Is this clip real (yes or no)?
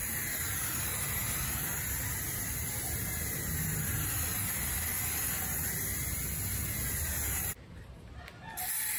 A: yes